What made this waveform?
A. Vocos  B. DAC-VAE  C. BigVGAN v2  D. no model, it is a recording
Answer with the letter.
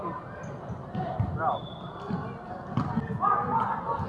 D